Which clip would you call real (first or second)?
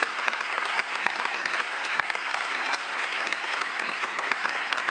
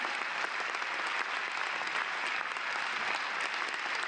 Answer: second